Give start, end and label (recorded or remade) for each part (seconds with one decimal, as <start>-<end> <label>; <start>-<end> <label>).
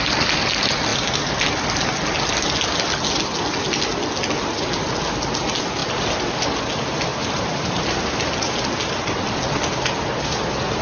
0.0-5.8 recorded; 5.8-6.6 remade; 6.6-7.1 recorded; 7.1-7.8 remade; 7.8-10.8 recorded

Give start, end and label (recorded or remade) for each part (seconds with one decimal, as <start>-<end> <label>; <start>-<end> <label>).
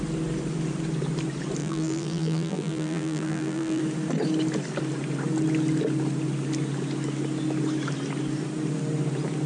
0.0-1.6 recorded; 1.6-3.8 remade; 3.8-9.5 recorded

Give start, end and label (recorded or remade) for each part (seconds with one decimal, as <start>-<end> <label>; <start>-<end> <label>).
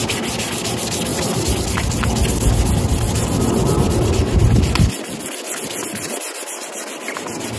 0.0-7.6 recorded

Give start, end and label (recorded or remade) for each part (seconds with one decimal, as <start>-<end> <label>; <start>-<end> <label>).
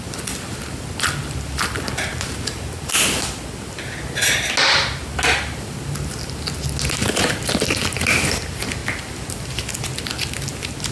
0.0-10.9 recorded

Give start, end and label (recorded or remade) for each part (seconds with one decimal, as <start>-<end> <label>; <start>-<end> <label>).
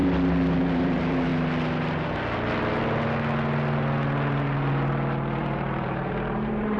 0.0-0.6 recorded; 0.6-1.3 remade; 1.3-5.4 recorded; 5.4-6.8 remade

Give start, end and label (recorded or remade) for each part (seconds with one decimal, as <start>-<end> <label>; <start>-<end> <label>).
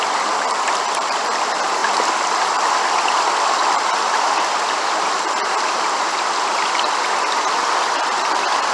0.0-8.7 remade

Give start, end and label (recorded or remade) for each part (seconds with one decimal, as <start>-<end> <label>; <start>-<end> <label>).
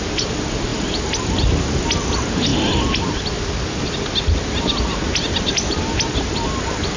0.0-0.7 recorded; 0.7-1.8 remade; 1.8-7.0 recorded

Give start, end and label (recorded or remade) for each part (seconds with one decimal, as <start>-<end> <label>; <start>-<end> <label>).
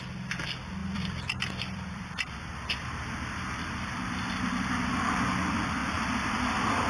0.0-0.8 recorded; 0.8-4.9 remade; 4.9-5.8 recorded; 5.8-6.9 remade